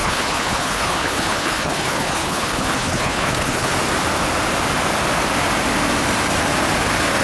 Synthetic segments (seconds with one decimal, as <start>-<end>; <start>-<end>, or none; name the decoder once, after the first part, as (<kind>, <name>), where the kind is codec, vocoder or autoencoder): 0.0-3.7 (codec, HILCodec)